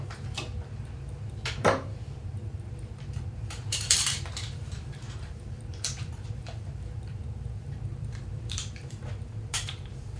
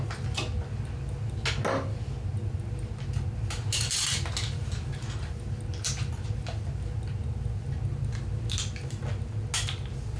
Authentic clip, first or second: second